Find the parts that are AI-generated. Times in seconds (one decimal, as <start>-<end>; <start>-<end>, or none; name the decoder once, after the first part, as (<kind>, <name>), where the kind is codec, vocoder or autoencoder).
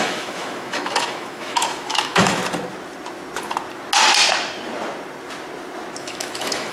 0.0-2.4 (autoencoder, DAC-VAE); 6.0-6.7